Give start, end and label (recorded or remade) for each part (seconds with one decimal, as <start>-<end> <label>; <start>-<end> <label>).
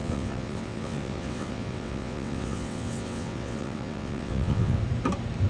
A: 0.0-4.8 remade; 4.8-5.5 recorded